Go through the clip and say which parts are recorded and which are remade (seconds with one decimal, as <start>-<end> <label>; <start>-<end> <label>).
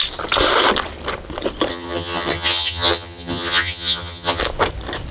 0.0-1.7 recorded; 1.7-4.4 remade; 4.4-5.1 recorded